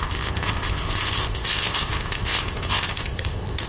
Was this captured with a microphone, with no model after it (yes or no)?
no